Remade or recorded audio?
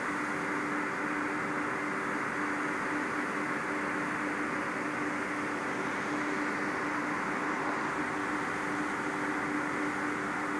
recorded